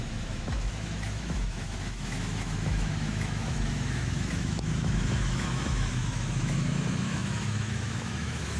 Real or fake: fake